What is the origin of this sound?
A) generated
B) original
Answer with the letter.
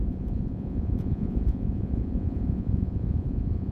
A